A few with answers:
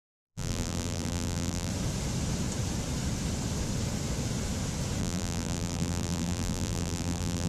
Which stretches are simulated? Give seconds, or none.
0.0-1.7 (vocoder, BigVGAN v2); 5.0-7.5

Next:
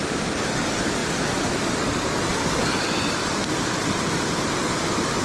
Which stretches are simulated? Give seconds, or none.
none